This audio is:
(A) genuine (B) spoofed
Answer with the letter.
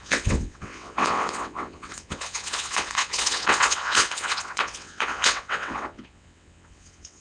B